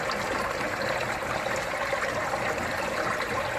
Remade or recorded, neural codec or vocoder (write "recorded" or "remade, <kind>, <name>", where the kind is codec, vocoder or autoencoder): recorded